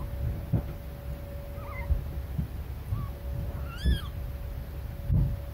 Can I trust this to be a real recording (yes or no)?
yes